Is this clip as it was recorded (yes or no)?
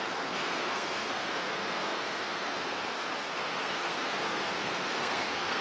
no